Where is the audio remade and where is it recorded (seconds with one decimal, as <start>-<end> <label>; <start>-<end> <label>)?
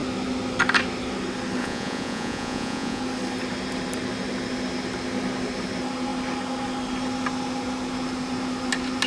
0.0-1.6 recorded; 1.6-3.0 remade; 3.0-9.1 recorded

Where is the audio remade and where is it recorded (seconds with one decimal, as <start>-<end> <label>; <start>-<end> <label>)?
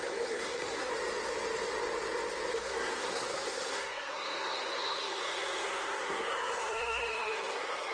0.0-0.9 remade; 0.9-2.5 recorded; 2.5-7.9 remade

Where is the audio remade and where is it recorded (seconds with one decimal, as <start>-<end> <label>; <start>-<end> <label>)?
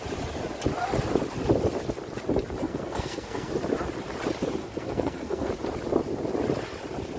0.0-2.6 recorded; 2.6-3.5 remade; 3.5-4.6 recorded; 4.6-5.5 remade; 5.5-7.2 recorded